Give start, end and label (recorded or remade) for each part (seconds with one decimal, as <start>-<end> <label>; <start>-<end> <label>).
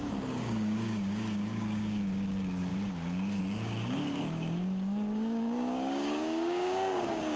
0.0-7.4 remade